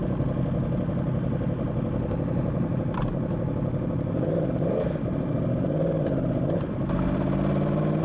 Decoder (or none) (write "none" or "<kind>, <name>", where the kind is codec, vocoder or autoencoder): none